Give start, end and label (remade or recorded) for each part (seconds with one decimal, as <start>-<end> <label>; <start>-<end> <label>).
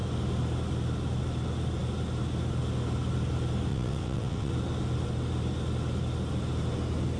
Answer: 0.0-3.7 recorded; 3.7-4.5 remade; 4.5-7.2 recorded